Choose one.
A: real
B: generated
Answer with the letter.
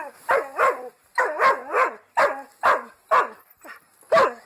A